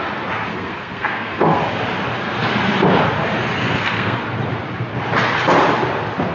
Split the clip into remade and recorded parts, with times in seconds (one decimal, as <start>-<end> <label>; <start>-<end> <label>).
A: 0.0-0.5 recorded; 0.5-1.6 remade; 1.6-3.6 recorded; 3.6-4.2 remade; 4.2-6.3 recorded